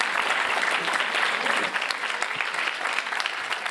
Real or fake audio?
fake